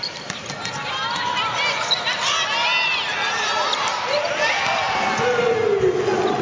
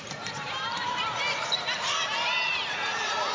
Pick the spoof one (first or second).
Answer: second